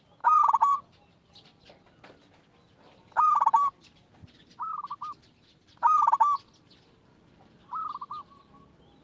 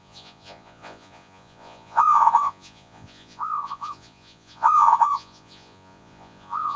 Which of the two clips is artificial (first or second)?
second